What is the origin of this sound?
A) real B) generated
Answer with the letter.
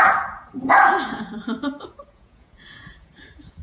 B